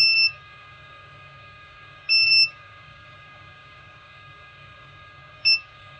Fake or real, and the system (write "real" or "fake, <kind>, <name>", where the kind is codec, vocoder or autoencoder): fake, codec, DAC